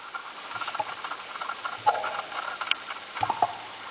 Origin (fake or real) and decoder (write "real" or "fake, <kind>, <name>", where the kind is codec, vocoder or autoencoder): real